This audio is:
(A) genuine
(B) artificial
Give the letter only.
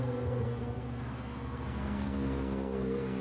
B